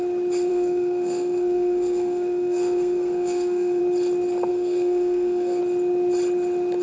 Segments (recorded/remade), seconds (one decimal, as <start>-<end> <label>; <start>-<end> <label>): 0.0-0.5 recorded; 0.5-3.8 remade; 3.8-4.5 recorded; 4.5-5.6 remade; 5.6-6.8 recorded